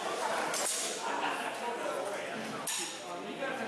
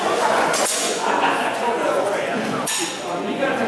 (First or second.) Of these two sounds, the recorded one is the first